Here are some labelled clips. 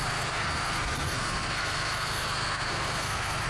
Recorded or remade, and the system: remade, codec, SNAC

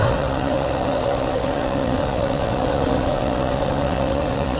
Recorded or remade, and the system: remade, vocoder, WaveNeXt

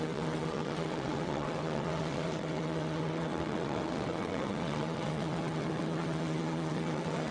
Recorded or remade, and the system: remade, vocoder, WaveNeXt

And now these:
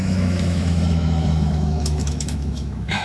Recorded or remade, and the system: remade, autoencoder, DAC-VAE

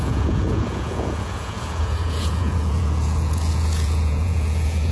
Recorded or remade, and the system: remade, vocoder, Vocos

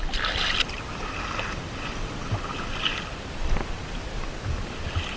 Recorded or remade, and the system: recorded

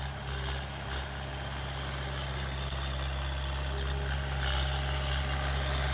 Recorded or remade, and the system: recorded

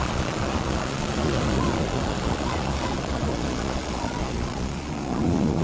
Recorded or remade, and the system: remade, vocoder, Vocos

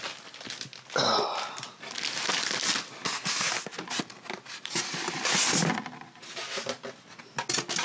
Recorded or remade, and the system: recorded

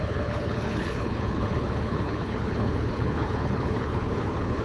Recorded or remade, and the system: remade, codec, HILCodec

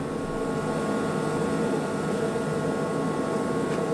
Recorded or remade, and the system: recorded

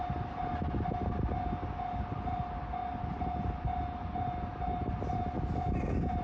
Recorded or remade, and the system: recorded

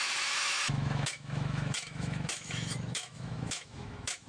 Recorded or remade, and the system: remade, autoencoder, DAC-VAE